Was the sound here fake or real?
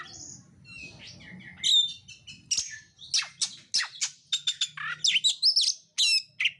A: real